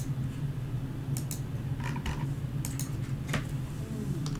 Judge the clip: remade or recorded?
recorded